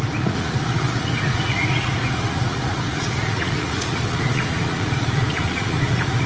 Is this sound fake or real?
fake